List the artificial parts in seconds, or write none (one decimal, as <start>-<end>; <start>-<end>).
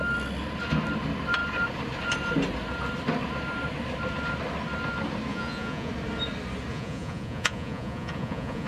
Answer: 5.3-5.9; 6.7-8.7